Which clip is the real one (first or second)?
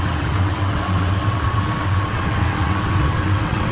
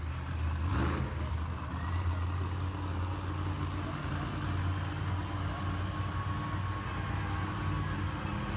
second